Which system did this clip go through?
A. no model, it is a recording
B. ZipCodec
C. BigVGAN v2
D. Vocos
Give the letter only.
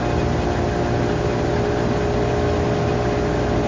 A